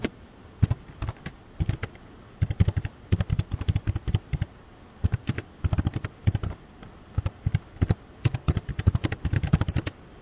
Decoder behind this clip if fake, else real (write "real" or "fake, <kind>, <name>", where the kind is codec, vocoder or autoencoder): real